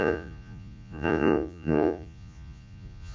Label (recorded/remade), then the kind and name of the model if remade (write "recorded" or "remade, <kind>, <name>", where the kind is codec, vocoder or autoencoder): remade, vocoder, Vocos